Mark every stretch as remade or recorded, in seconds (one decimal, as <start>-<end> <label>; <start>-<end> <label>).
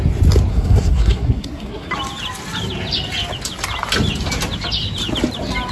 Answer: 0.0-0.5 recorded; 0.5-1.9 remade; 1.9-5.7 recorded